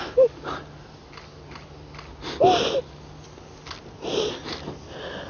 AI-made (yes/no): no